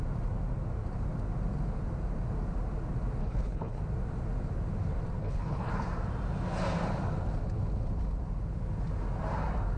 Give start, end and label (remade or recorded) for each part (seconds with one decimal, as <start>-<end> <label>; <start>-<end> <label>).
0.0-3.2 recorded; 3.2-3.8 remade; 3.8-5.2 recorded; 5.2-5.7 remade; 5.7-9.8 recorded